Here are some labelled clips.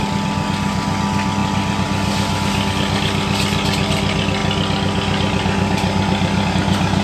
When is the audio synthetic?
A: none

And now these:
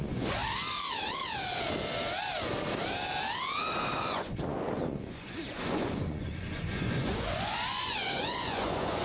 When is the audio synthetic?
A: 0.0-0.4 (vocoder, Vocos); 4.0-9.0

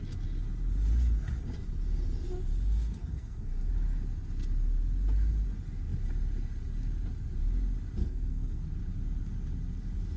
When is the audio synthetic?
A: 3.0-3.7 (codec, SNAC); 8.0-8.6

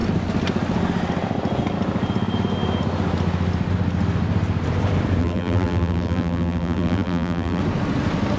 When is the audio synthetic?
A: 5.2-7.6 (vocoder, BigVGAN v2)

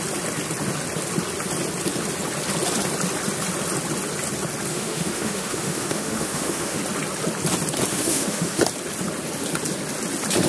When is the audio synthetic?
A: 4.7-6.8 (autoencoder, DAC-VAE); 7.9-8.6